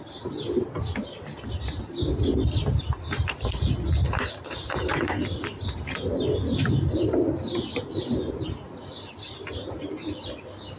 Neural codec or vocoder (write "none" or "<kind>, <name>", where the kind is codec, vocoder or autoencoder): none